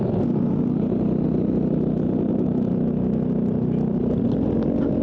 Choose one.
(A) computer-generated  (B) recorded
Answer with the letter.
B